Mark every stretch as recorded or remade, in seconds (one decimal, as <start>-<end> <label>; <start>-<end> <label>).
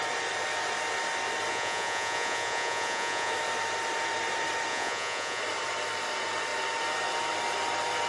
0.0-1.5 recorded; 1.5-3.3 remade; 3.3-4.7 recorded; 4.7-5.4 remade; 5.4-8.1 recorded